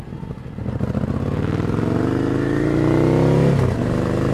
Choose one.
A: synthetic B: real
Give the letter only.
B